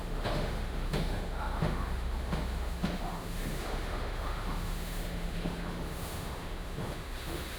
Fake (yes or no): yes